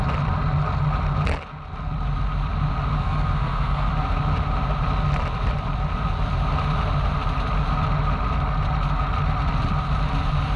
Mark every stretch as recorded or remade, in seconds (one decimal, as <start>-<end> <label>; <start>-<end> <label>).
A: 0.0-2.9 recorded; 2.9-3.9 remade; 3.9-10.6 recorded